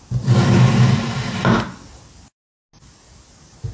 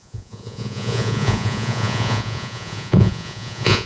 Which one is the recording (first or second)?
first